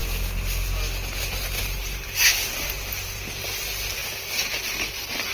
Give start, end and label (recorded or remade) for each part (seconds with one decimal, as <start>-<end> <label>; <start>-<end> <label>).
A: 0.0-5.3 recorded